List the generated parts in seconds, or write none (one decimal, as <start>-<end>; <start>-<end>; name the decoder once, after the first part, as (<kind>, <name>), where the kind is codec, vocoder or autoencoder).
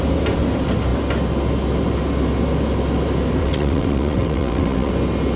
3.4-4.9 (vocoder, WaveNeXt)